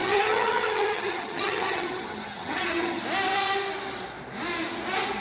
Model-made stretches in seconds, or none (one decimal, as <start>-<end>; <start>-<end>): 0.0-3.0